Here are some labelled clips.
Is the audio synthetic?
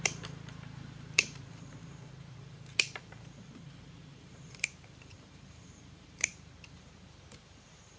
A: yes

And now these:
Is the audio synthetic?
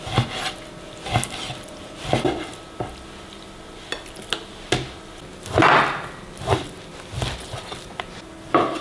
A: no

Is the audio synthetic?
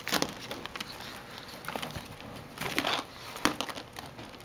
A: no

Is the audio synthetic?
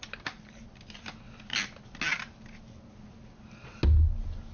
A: no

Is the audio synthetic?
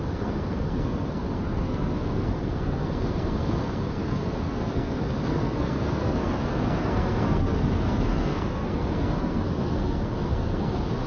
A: yes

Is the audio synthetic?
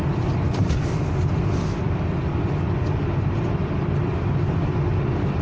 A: no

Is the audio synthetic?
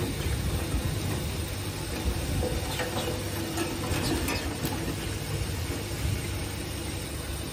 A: no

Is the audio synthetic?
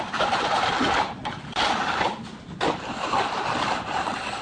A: no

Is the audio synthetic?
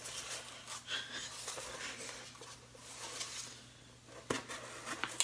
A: no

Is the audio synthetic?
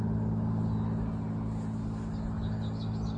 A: no